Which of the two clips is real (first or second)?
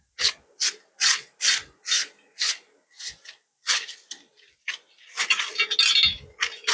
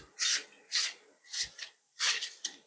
first